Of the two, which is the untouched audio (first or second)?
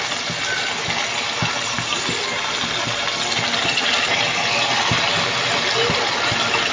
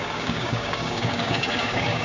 first